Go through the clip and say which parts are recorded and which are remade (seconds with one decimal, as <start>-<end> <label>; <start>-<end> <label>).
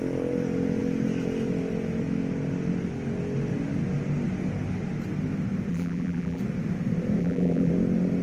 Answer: 0.0-5.7 recorded; 5.7-6.4 remade; 6.4-7.2 recorded; 7.2-7.7 remade; 7.7-8.2 recorded